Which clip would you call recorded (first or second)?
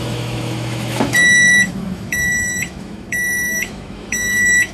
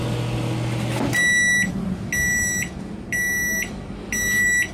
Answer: second